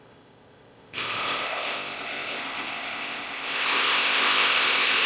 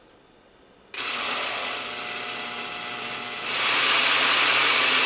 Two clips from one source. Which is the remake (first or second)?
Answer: first